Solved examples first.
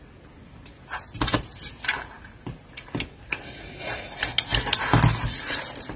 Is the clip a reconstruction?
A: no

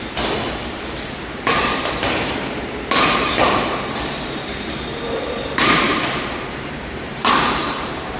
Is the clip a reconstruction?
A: yes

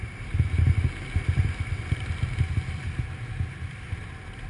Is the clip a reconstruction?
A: no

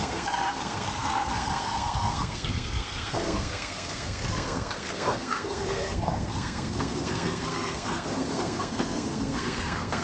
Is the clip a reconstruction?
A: yes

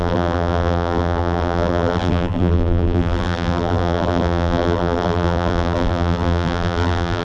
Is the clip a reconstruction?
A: yes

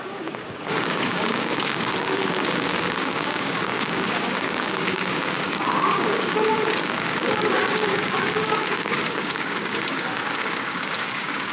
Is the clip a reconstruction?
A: yes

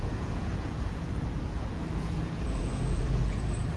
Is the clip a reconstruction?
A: yes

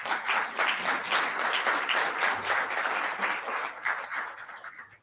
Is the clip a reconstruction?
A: no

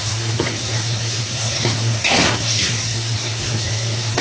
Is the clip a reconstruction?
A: yes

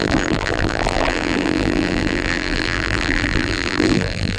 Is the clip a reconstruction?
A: yes